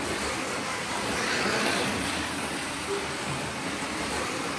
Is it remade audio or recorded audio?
recorded